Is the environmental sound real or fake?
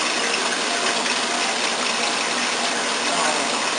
real